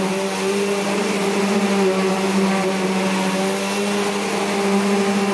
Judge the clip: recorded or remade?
recorded